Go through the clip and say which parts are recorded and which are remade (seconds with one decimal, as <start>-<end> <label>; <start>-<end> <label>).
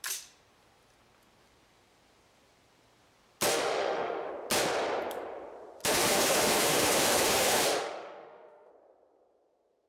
0.0-3.5 recorded; 3.5-4.3 remade; 4.3-5.8 recorded; 5.8-8.7 remade; 8.7-9.9 recorded